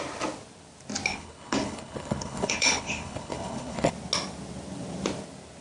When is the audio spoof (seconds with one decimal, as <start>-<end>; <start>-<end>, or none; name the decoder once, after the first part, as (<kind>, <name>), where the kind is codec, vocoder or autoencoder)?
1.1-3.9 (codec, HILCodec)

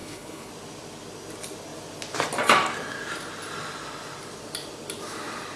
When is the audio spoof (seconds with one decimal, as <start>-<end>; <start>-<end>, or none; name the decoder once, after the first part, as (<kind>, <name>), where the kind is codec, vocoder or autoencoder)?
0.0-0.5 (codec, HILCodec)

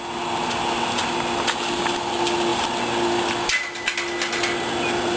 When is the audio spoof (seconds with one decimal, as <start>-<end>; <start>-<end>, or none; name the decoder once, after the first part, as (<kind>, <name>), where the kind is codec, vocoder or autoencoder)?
none

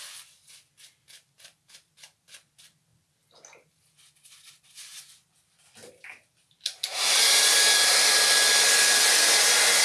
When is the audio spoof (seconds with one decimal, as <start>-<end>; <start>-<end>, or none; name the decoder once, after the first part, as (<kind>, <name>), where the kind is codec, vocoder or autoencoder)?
none